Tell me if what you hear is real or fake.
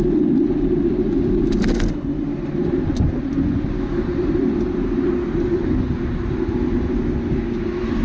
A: real